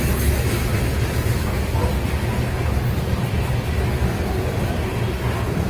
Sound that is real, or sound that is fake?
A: real